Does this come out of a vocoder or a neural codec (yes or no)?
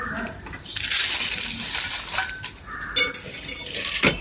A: no